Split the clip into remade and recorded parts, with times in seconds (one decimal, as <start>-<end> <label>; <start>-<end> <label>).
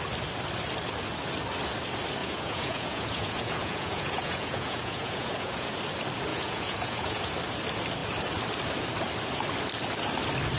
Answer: 0.0-2.2 recorded; 2.2-5.8 remade; 5.8-6.3 recorded; 6.3-7.3 remade; 7.3-10.6 recorded